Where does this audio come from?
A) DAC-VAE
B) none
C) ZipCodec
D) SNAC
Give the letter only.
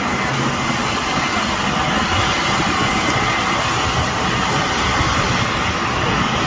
B